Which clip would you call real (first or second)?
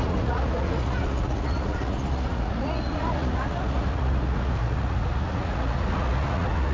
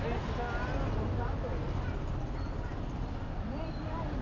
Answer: second